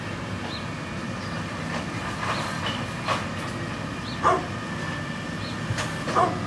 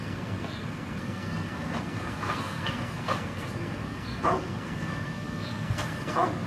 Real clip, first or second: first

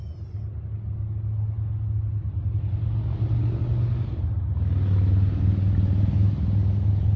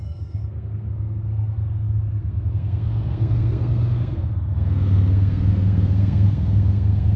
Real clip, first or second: first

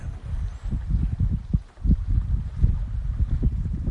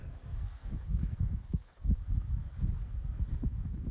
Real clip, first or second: first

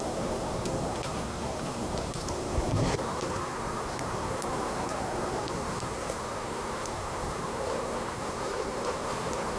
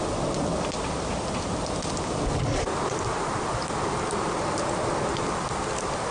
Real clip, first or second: second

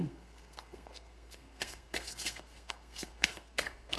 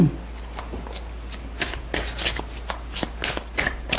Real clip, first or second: second